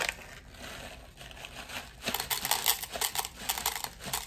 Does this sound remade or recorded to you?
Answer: recorded